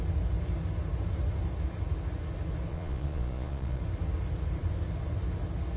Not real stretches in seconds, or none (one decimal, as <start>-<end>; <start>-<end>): 2.7-3.8